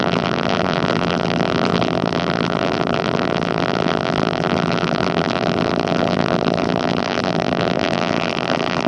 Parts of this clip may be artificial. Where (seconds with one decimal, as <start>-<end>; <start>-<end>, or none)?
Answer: 0.0-8.9